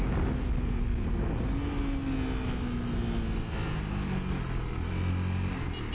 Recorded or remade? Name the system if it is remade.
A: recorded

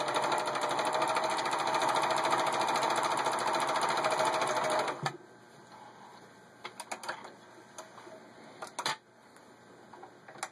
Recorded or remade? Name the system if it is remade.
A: recorded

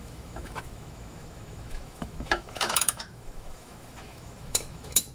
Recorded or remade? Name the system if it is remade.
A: remade, autoencoder, DAC-VAE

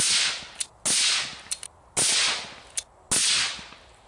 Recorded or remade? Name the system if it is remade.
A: recorded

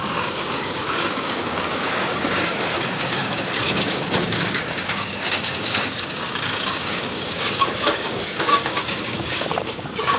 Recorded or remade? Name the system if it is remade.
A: remade, codec, DAC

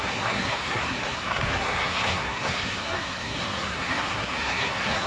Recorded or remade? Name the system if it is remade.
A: remade, codec, SNAC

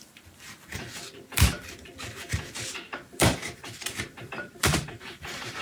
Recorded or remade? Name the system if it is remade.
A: remade, vocoder, BigVGAN v2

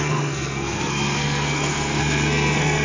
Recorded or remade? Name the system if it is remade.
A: remade, codec, SNAC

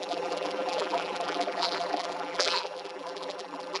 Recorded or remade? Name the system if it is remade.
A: remade, vocoder, BigVGAN v2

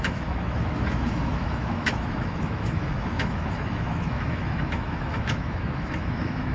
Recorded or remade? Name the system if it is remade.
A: remade, autoencoder, DAC-VAE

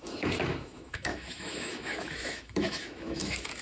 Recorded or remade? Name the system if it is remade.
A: remade, autoencoder, DAC-VAE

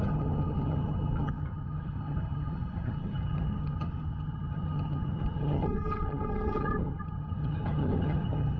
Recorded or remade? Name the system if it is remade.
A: remade, vocoder, HiFi-GAN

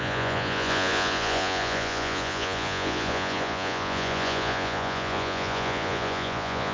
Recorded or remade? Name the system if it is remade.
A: remade, vocoder, Vocos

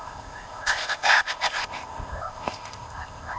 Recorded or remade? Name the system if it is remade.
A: remade, codec, ZipCodec